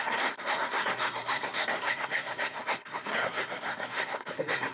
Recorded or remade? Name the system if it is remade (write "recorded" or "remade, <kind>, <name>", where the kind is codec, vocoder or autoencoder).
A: remade, codec, SNAC